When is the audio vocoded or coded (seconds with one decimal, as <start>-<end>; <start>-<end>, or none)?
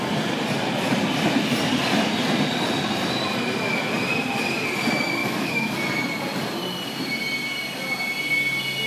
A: 5.2-5.7